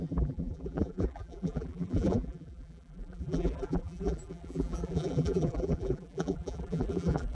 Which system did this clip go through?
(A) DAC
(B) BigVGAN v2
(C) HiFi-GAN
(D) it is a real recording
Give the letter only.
B